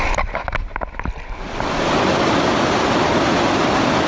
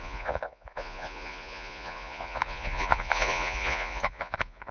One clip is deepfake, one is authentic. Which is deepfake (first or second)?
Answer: second